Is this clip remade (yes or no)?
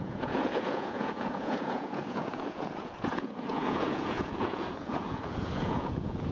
yes